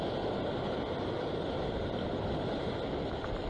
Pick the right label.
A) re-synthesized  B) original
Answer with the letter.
B